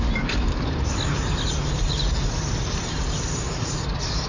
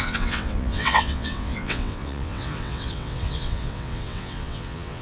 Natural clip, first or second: first